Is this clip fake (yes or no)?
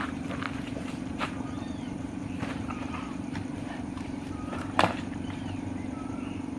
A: yes